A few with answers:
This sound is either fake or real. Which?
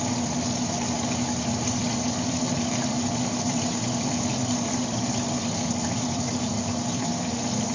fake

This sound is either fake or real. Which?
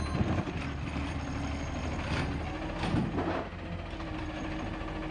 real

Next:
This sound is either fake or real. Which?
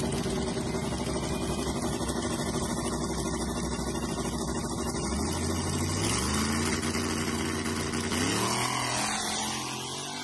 real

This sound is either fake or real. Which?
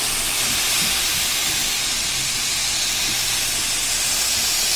real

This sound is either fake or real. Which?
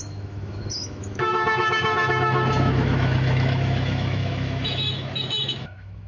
fake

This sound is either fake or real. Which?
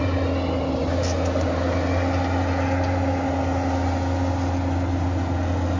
real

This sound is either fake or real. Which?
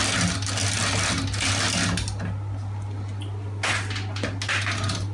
real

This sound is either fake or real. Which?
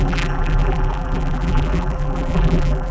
fake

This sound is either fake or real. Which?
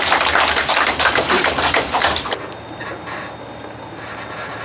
real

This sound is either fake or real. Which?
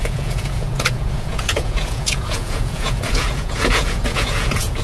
fake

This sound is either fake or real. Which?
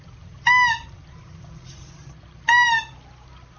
fake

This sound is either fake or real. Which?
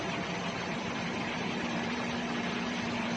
fake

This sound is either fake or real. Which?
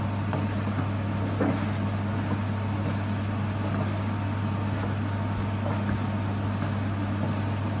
real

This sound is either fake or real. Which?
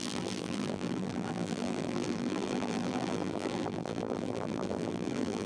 fake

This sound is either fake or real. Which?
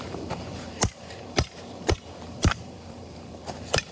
fake